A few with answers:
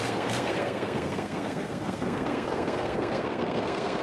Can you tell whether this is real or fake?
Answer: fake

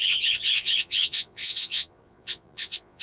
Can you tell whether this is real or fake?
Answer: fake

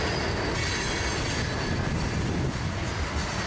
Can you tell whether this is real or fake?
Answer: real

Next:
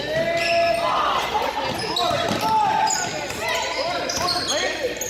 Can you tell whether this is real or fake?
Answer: real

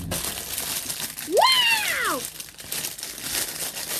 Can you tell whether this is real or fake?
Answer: real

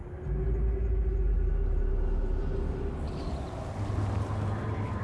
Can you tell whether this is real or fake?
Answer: real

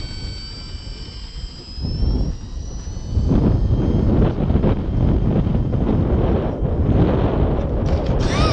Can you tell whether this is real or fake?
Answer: real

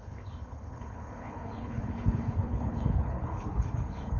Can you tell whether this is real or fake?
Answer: fake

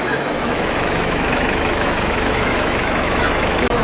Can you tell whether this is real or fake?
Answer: fake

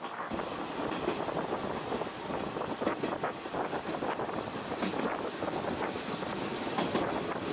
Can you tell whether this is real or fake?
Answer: real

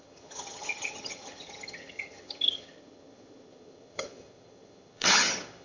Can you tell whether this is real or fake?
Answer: fake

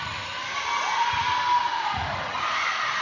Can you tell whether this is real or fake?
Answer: real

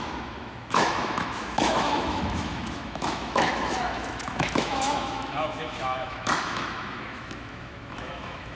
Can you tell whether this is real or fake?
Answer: fake